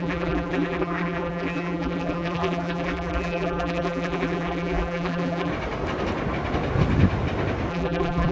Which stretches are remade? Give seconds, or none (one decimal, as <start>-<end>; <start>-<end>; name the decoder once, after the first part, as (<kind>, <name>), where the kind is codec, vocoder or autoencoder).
0.0-5.5 (vocoder, BigVGAN v2); 7.7-8.3